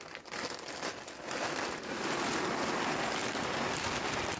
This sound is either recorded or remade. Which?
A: recorded